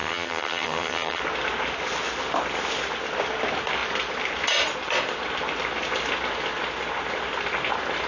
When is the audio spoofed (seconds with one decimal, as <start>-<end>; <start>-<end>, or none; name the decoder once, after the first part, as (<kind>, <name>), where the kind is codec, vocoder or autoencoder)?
0.0-1.2 (vocoder, HiFi-GAN)